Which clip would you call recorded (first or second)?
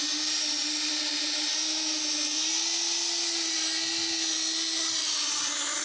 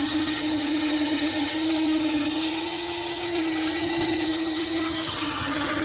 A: first